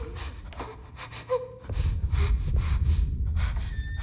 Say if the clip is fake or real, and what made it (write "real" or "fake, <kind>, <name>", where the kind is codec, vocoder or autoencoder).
real